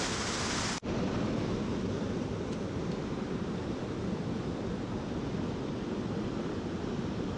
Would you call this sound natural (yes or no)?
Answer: no